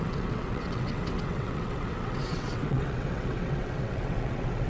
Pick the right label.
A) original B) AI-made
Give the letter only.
B